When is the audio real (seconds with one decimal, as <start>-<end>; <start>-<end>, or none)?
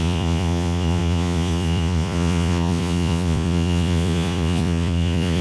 none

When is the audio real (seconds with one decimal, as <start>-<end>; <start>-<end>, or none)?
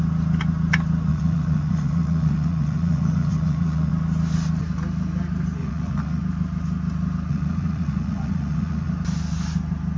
0.0-1.1; 3.9-5.6; 6.2-7.3; 8.9-10.0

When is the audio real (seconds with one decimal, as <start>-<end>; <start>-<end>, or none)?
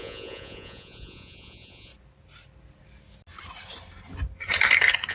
1.9-5.1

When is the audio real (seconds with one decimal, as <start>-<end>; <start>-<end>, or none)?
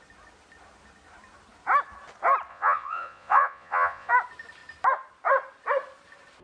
0.0-2.5; 4.1-6.4